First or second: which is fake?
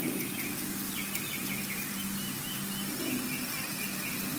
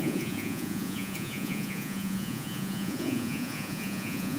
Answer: second